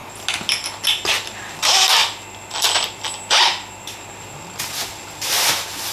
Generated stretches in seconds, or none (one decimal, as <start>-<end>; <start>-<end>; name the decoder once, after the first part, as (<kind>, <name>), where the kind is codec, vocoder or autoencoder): none